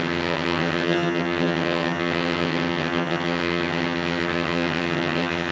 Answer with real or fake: fake